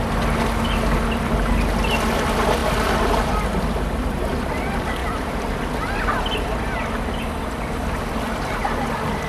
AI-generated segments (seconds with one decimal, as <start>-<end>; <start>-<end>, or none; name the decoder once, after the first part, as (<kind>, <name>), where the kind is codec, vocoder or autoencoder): none